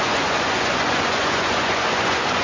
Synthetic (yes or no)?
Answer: yes